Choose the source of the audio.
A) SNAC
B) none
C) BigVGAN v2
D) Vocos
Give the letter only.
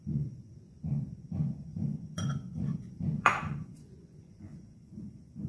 D